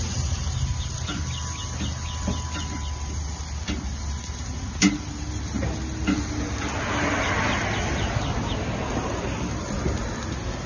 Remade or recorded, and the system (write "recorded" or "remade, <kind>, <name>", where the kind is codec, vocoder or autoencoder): recorded